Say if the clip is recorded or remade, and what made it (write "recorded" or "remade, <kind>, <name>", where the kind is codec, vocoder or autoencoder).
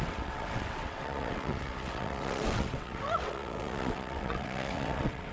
remade, vocoder, WaveNeXt